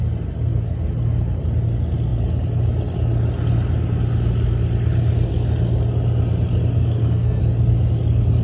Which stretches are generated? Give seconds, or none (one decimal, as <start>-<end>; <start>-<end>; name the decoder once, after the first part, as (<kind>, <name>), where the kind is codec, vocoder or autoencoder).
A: 6.8-7.4 (codec, SNAC)